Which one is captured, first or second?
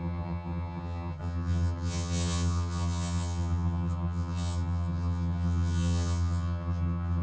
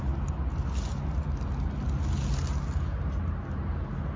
second